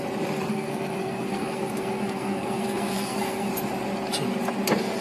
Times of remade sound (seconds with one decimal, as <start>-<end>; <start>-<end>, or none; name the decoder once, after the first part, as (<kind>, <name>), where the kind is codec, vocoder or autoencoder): 0.5-3.5 (codec, SNAC)